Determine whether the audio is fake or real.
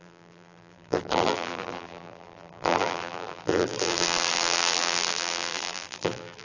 fake